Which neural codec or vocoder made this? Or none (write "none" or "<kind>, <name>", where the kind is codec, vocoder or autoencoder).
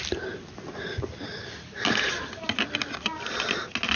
none